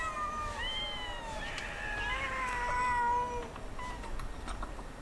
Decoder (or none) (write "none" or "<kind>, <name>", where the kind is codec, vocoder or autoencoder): none